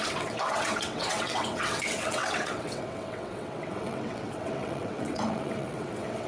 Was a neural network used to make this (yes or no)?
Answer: yes